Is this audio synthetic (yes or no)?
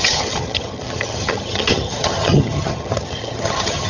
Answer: yes